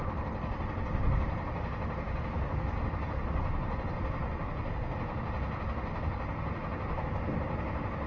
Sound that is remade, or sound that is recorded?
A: recorded